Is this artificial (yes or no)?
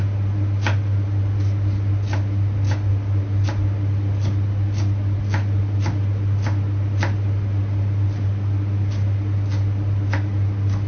no